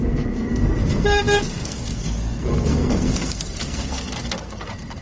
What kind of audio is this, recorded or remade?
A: remade